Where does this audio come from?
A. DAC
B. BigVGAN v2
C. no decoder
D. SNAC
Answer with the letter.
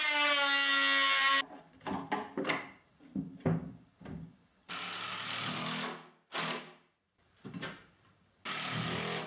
C